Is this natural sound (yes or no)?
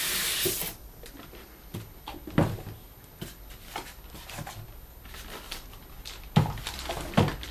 yes